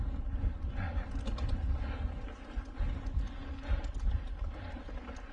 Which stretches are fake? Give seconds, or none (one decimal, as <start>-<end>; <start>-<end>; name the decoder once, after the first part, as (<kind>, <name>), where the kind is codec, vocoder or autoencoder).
none